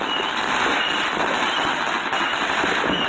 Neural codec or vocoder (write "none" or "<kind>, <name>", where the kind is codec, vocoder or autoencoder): none